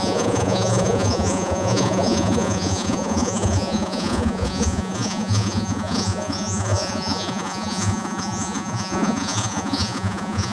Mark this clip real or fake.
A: fake